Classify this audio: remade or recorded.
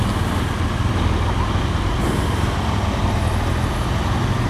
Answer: recorded